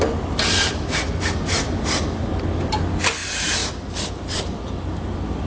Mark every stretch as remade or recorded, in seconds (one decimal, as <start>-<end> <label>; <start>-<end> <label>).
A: 0.0-5.5 recorded